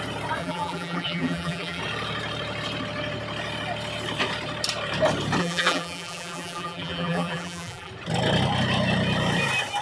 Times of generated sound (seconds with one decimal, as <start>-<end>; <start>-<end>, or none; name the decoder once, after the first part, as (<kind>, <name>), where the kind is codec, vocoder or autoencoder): 0.4-1.8 (vocoder, BigVGAN v2); 5.4-7.9